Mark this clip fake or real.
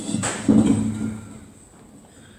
real